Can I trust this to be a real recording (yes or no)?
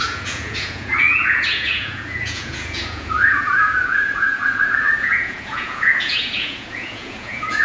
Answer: no